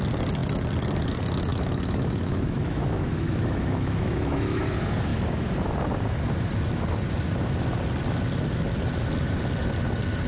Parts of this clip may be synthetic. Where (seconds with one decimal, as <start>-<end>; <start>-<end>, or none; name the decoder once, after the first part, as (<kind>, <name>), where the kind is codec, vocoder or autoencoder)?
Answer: 1.5-4.6 (autoencoder, DAC-VAE)